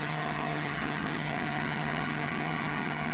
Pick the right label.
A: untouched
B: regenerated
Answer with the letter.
B